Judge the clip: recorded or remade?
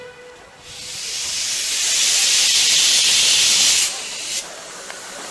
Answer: recorded